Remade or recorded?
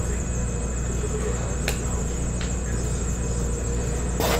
recorded